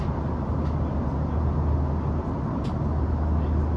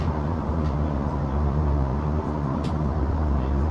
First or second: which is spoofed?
second